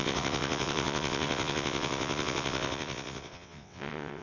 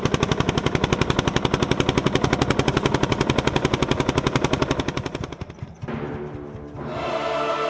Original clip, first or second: second